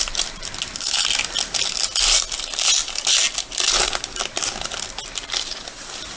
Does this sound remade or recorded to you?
recorded